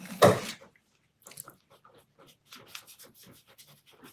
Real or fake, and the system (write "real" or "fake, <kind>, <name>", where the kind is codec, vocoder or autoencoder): real